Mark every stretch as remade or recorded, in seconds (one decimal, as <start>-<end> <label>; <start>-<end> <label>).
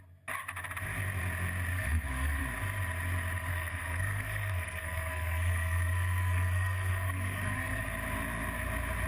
0.0-1.7 recorded; 1.7-2.4 remade; 2.4-3.5 recorded; 3.5-7.8 remade; 7.8-9.1 recorded